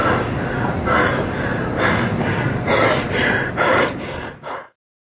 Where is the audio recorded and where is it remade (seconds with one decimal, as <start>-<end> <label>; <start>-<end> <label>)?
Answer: 0.0-5.0 recorded